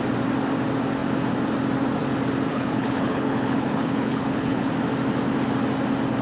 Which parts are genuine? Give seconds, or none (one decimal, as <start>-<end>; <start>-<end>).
0.0-2.5; 4.7-6.2